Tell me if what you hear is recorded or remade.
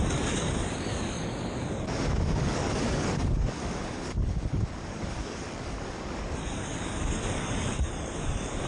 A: remade